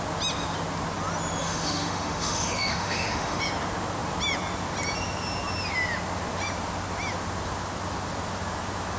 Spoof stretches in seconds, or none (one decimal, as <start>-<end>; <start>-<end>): 1.4-3.4